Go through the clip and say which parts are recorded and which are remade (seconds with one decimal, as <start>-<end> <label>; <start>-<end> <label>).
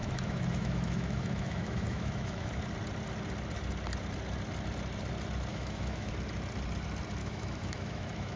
0.0-2.6 remade; 2.6-5.5 recorded; 5.5-6.1 remade; 6.1-7.2 recorded; 7.2-8.4 remade